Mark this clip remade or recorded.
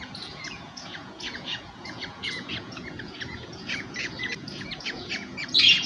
remade